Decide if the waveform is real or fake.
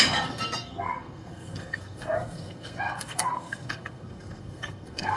fake